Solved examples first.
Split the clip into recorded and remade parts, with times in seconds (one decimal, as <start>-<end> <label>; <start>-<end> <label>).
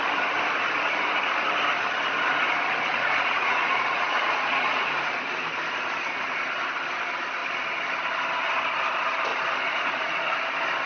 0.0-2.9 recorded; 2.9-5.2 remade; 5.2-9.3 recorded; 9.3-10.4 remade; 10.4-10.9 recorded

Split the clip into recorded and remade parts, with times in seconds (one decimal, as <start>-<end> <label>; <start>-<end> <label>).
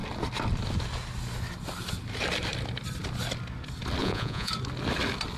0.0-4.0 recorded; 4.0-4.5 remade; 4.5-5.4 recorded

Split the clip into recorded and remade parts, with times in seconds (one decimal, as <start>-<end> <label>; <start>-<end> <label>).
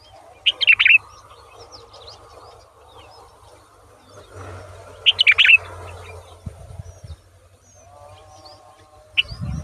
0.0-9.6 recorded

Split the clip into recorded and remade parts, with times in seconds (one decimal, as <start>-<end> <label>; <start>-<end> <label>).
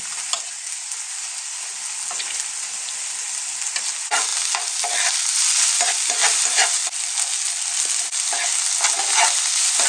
0.0-9.9 recorded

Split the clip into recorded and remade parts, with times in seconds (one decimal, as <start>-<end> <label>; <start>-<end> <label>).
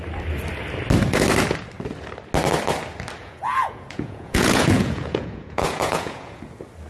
0.0-3.2 recorded; 3.2-6.4 remade; 6.4-6.9 recorded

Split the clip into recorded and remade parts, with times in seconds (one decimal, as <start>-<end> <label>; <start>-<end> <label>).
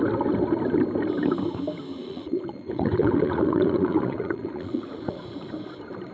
0.0-2.0 recorded; 2.0-5.5 remade; 5.5-6.1 recorded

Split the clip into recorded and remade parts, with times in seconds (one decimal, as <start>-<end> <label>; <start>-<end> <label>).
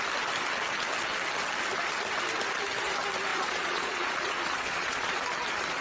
0.0-3.3 recorded; 3.3-5.2 remade; 5.2-5.8 recorded